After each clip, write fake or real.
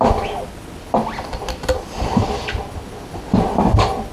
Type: real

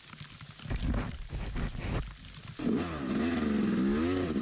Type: real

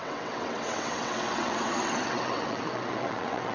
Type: fake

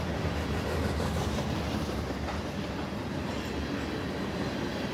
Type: real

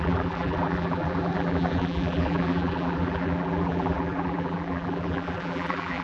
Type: fake